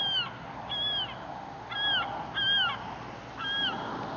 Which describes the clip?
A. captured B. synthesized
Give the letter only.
A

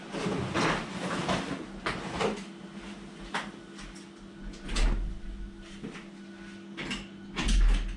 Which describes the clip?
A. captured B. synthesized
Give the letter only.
A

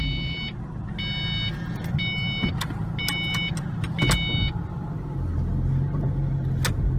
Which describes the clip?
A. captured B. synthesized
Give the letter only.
A